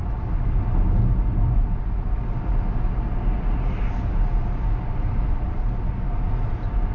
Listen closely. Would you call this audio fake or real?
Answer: real